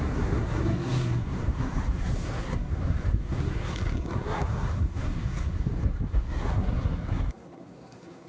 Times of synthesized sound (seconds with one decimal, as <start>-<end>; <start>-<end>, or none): 0.0-8.3